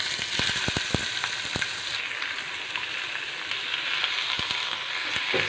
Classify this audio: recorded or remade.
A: recorded